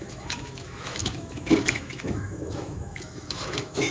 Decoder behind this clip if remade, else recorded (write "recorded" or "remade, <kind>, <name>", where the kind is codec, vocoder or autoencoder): remade, autoencoder, DAC-VAE